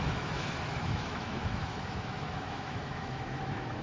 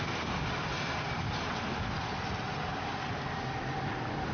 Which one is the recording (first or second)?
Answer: second